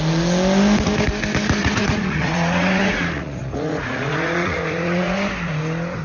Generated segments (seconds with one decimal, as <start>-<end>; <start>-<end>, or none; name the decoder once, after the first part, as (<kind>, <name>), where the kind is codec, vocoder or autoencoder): 1.6-5.2 (vocoder, Vocos)